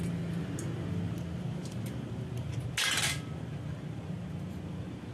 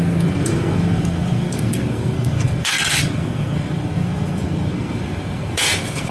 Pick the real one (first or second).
first